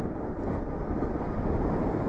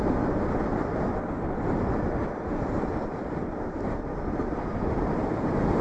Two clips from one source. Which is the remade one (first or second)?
second